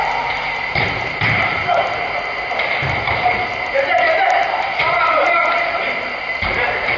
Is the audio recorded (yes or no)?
no